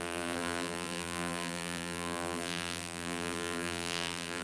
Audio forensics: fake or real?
fake